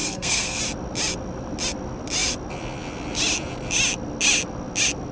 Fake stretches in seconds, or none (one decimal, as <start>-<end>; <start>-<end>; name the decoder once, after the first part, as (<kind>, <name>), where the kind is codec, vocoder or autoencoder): 0.0-0.6 (codec, SNAC)